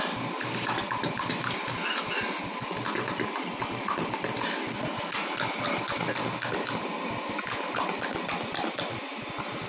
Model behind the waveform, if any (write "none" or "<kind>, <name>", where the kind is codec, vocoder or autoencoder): none